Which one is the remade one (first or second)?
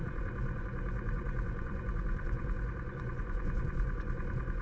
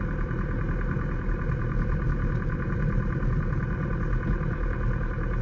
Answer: first